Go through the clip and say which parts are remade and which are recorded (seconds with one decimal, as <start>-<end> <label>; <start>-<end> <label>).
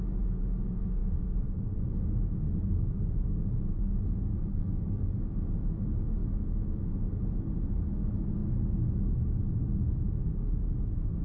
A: 0.0-4.5 recorded; 4.5-5.1 remade; 5.1-11.2 recorded